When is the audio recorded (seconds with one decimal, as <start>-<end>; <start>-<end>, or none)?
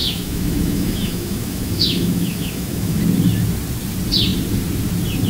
3.0-5.3